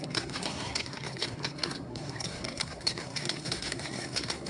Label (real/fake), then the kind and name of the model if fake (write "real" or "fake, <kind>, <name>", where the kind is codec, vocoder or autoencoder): fake, codec, SNAC